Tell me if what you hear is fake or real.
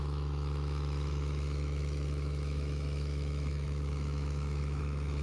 fake